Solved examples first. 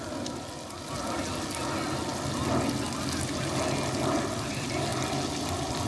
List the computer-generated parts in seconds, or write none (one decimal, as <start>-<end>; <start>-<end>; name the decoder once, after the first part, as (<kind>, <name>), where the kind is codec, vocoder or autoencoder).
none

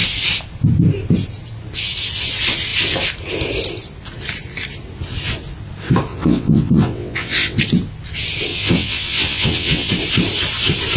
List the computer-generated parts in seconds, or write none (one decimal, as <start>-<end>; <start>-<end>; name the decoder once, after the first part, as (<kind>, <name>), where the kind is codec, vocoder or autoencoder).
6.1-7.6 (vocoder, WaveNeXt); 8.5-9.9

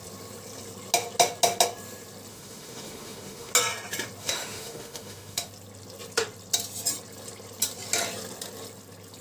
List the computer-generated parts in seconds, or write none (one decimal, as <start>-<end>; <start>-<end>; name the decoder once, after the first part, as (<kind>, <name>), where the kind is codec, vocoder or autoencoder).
2.3-3.5 (autoencoder, DAC-VAE); 4.2-5.5